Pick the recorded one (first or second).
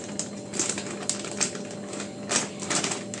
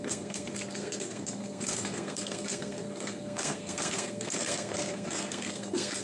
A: first